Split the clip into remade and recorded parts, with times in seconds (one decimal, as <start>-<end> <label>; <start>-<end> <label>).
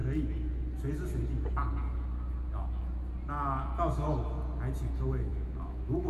0.0-5.3 recorded; 5.3-6.1 remade